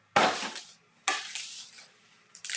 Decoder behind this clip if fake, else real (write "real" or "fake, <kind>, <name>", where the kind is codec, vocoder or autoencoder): real